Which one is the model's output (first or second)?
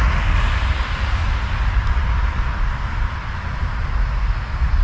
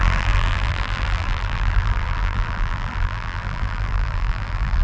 second